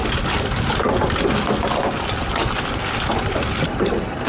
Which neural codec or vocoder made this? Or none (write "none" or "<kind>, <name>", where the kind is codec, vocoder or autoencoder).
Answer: none